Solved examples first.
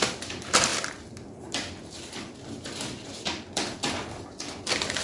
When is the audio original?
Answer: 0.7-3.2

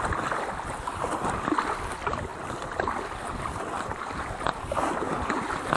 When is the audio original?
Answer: 0.0-5.8

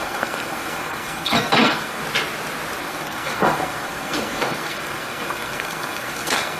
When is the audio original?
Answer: 2.0-2.8

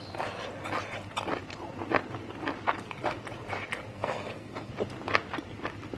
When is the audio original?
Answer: 0.0-3.9; 4.7-6.0

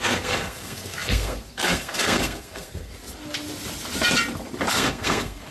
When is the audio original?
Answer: 2.9-4.7

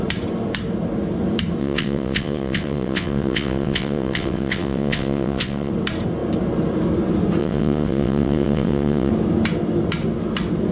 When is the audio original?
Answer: 0.0-1.6; 5.7-7.4; 9.1-10.7